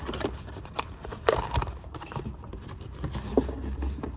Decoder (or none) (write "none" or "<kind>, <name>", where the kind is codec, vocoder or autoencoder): vocoder, BigVGAN v2